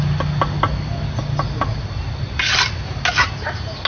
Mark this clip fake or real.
real